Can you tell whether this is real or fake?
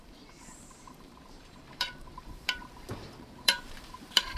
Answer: fake